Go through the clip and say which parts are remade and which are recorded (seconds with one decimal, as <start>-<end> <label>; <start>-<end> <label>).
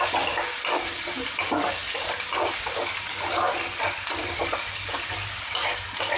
0.0-6.2 recorded